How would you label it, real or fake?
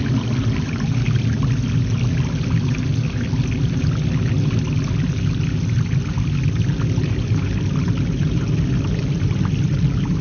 real